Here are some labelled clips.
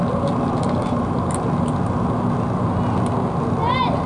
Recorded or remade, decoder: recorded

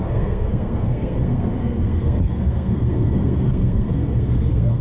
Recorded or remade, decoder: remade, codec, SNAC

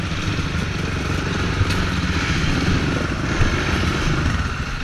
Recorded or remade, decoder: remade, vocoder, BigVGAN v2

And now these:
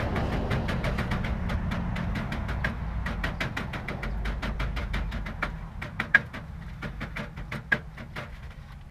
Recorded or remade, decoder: recorded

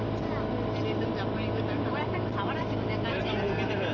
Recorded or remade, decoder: recorded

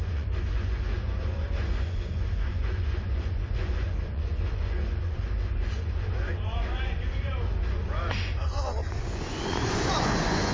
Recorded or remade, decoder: remade, vocoder, Vocos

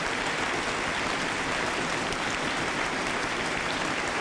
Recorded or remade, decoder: recorded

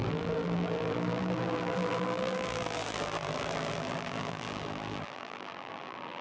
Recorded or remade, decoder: remade, vocoder, BigVGAN v2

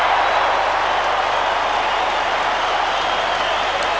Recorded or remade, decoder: recorded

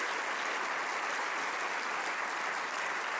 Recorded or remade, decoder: recorded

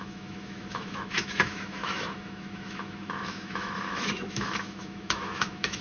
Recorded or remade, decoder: remade, autoencoder, DAC-VAE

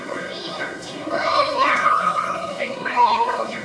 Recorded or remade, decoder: remade, codec, SNAC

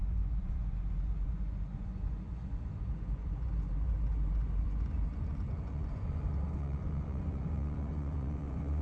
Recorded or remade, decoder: remade, vocoder, Vocos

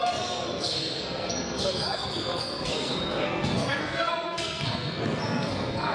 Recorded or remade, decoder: remade, codec, SNAC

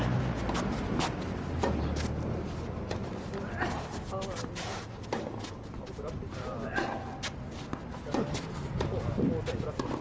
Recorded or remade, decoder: recorded